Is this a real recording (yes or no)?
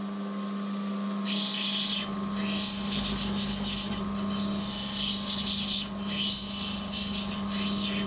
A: yes